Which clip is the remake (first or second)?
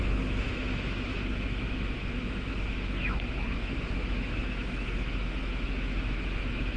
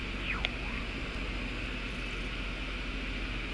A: first